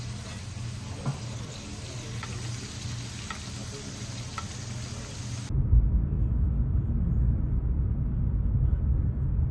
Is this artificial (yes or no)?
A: no